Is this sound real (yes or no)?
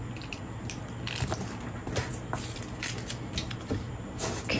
yes